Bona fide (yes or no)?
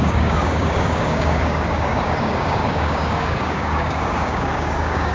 no